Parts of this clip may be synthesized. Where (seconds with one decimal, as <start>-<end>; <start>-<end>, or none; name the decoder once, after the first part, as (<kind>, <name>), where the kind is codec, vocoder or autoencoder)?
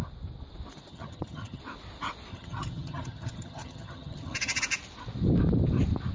0.9-1.6 (vocoder, HiFi-GAN); 2.3-4.6